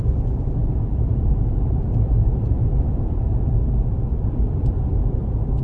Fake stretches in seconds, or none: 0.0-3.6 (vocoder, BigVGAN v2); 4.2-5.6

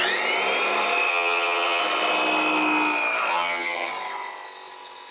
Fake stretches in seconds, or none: 1.1-1.8 (vocoder, HiFi-GAN); 3.3-3.9

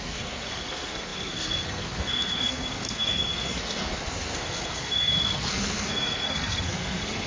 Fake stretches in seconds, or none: 0.0-7.3 (codec, SNAC)